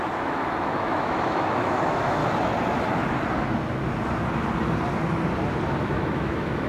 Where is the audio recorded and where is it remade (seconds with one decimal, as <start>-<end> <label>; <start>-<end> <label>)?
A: 0.0-2.2 remade; 2.2-5.8 recorded; 5.8-6.7 remade